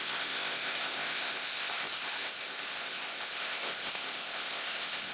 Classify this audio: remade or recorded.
remade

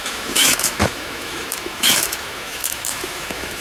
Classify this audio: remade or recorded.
remade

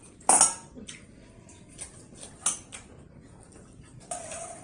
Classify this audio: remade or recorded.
recorded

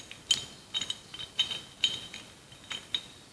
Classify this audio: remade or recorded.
recorded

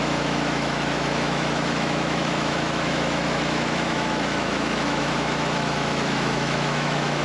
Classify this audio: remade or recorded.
remade